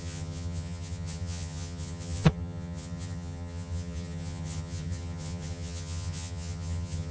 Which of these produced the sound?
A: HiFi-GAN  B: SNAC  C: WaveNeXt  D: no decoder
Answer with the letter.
A